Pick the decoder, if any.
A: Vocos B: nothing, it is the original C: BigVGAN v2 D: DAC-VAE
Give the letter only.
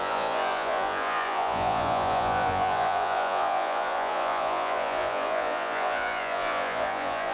A